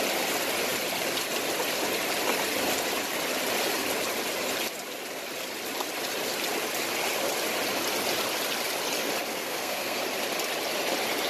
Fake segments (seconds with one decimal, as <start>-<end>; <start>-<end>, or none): 9.3-10.0